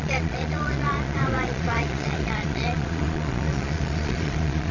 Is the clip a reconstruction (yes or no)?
yes